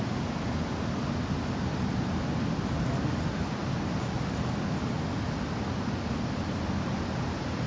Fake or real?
real